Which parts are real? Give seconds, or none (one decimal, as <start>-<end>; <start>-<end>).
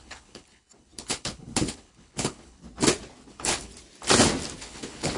2.6-3.3; 3.7-4.6